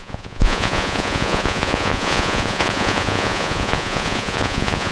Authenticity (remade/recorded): remade